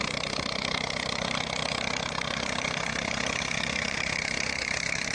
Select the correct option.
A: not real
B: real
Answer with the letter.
A